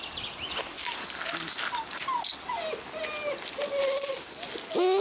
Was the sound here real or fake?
real